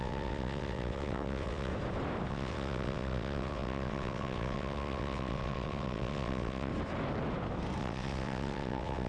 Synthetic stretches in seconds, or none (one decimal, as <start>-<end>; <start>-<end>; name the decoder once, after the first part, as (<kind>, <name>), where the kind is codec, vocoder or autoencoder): 0.0-1.7 (vocoder, WaveNeXt); 2.3-6.7; 7.8-9.1